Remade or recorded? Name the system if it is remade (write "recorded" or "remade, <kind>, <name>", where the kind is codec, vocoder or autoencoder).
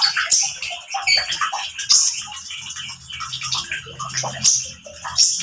recorded